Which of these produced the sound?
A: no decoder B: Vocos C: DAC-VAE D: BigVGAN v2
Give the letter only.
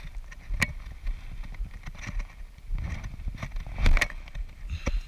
A